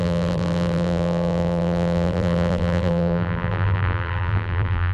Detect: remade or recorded remade